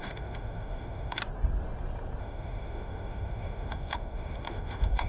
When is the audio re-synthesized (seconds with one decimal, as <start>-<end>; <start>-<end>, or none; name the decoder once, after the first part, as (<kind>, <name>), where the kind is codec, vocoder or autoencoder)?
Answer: 0.0-1.2 (autoencoder, DAC-VAE); 2.2-5.1